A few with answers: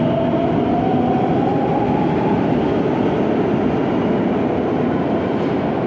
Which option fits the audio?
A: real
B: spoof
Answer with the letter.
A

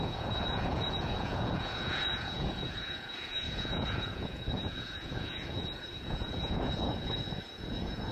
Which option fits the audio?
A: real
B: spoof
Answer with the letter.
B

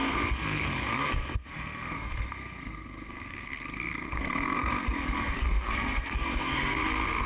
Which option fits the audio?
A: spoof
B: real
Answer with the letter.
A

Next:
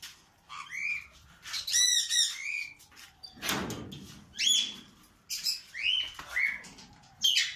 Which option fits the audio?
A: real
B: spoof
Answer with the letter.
A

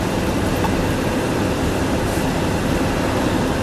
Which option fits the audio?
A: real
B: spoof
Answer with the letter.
A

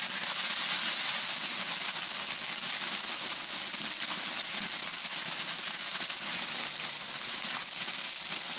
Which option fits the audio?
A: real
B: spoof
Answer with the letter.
A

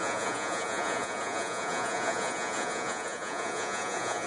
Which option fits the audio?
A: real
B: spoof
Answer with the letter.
B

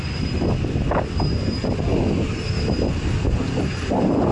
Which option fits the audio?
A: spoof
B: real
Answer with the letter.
B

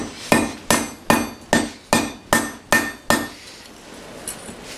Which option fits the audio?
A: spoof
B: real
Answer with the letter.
B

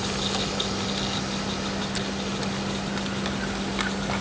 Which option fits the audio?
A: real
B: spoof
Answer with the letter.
A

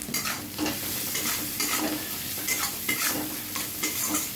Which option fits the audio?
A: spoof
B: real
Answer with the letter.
B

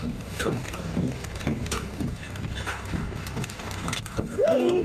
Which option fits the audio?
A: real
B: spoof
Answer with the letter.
B